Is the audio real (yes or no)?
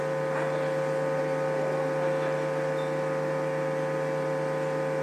yes